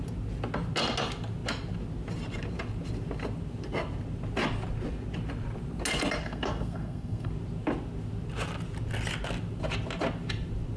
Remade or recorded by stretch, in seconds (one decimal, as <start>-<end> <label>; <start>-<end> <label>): 0.0-6.2 recorded; 6.2-7.3 remade; 7.3-10.8 recorded